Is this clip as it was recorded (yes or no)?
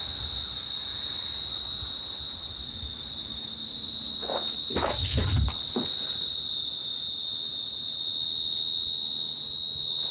yes